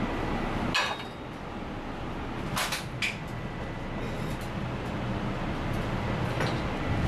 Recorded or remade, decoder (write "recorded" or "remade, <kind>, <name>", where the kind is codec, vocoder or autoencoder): recorded